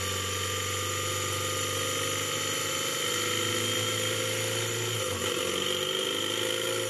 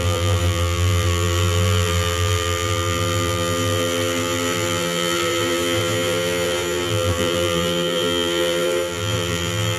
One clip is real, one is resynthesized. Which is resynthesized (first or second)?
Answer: second